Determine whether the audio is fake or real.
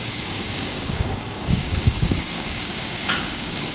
fake